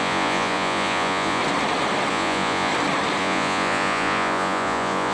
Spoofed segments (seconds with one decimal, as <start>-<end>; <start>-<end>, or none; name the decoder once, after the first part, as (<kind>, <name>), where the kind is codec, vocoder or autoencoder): 0.0-1.4 (vocoder, Vocos); 2.1-2.7; 3.2-5.1